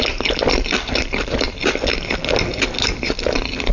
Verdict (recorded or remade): recorded